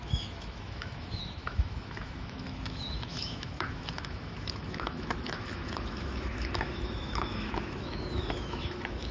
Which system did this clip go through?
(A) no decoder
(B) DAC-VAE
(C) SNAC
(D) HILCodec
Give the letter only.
B